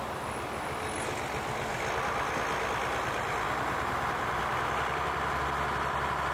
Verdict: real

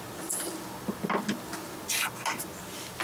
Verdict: real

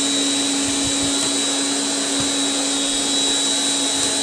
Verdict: real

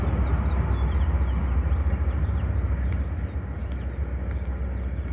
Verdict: real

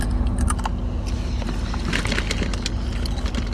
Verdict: real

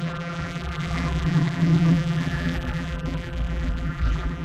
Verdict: fake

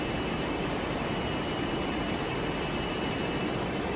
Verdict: real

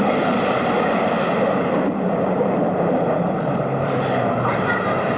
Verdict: fake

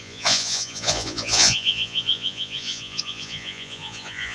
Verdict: fake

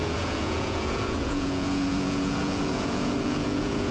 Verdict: fake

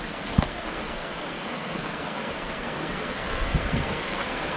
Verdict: fake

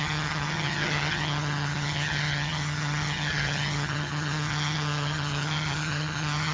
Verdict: fake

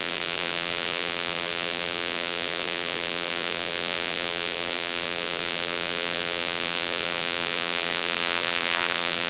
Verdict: fake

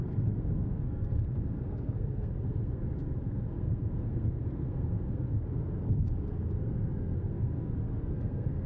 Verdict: fake